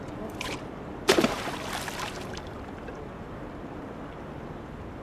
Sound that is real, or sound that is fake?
fake